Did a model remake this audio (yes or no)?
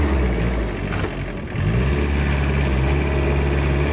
no